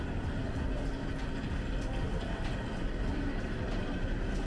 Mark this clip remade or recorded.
recorded